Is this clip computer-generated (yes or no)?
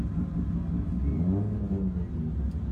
no